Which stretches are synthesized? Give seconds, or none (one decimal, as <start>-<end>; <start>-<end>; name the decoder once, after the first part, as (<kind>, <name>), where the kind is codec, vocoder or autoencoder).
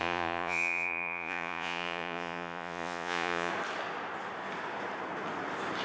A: 0.0-3.5 (vocoder, Vocos)